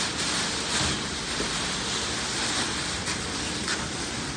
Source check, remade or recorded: recorded